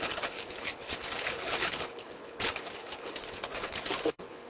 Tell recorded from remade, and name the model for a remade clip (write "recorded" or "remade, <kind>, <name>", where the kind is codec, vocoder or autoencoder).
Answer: remade, codec, HILCodec